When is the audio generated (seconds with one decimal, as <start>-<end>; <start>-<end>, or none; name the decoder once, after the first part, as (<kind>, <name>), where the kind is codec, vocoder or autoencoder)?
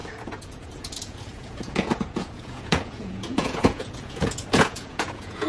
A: 0.0-5.5 (vocoder, Vocos)